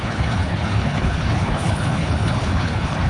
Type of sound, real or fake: fake